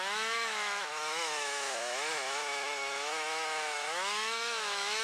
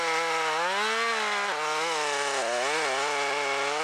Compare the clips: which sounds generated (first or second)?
first